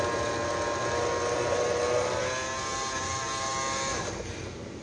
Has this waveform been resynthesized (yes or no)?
no